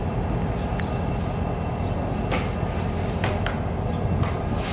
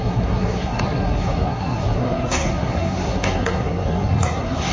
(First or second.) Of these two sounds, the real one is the first